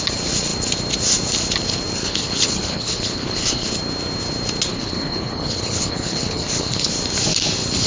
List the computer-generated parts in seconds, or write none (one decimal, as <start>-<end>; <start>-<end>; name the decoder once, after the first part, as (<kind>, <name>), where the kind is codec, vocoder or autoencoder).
2.0-3.7 (codec, HILCodec); 4.7-6.9

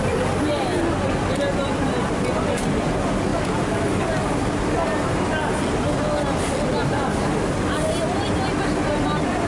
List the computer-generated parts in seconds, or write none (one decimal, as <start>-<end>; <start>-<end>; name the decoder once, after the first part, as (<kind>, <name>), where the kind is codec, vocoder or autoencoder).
none

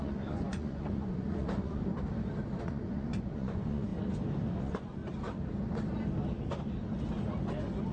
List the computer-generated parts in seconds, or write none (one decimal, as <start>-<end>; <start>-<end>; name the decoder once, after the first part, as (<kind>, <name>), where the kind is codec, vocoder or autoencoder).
0.0-1.8 (vocoder, Vocos); 2.6-3.9; 4.6-5.0

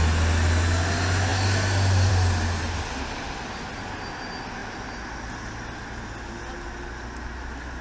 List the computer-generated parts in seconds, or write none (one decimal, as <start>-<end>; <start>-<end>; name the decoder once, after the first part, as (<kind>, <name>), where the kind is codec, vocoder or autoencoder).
none

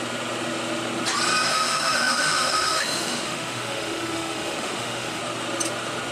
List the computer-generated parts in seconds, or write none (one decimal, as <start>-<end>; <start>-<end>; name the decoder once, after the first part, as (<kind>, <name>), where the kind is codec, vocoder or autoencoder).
1.5-5.2 (autoencoder, DAC-VAE)

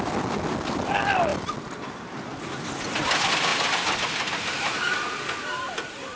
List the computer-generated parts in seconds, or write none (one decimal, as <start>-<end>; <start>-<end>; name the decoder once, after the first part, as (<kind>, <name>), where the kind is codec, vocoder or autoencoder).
none

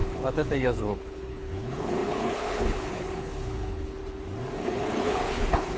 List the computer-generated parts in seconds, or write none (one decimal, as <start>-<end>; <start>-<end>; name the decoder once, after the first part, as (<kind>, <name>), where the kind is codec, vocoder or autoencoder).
0.0-4.0 (codec, HILCodec); 4.6-5.8